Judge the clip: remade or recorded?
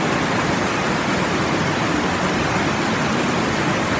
recorded